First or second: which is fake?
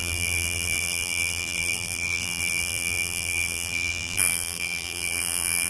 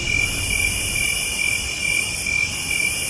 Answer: first